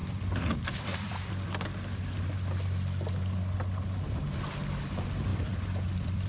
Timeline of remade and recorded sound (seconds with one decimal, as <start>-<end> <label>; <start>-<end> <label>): 0.0-1.3 remade; 1.3-5.3 recorded; 5.3-6.3 remade